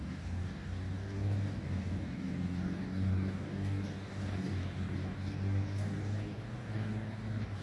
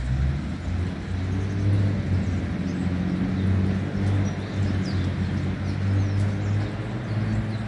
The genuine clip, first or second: second